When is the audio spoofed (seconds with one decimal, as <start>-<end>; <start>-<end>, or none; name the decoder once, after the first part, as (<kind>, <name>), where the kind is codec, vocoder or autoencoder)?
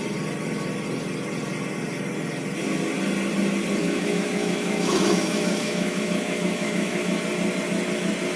3.8-7.2 (autoencoder, DAC-VAE)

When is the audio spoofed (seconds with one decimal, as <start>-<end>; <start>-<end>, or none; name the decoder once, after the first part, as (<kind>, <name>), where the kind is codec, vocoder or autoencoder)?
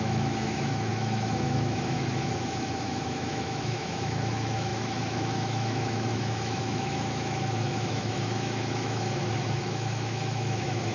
0.0-10.9 (autoencoder, DAC-VAE)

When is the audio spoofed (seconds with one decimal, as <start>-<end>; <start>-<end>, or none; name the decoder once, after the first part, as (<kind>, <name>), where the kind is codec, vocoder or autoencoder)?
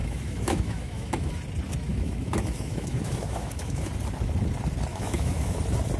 0.0-1.3 (autoencoder, DAC-VAE); 1.9-3.9; 4.9-5.6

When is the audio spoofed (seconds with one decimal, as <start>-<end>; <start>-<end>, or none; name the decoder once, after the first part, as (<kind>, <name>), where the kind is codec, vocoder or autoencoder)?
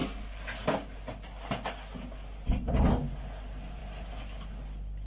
none